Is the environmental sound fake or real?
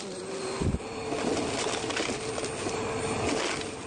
real